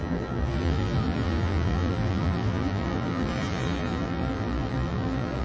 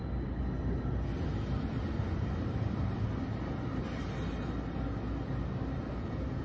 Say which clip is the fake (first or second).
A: first